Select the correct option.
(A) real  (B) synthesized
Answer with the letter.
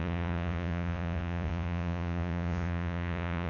B